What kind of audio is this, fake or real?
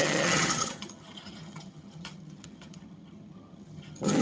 fake